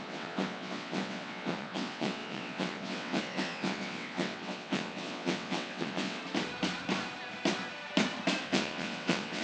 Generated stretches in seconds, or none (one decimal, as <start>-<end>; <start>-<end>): 0.0-6.2; 8.4-9.4